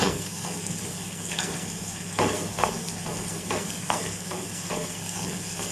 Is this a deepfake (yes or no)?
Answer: yes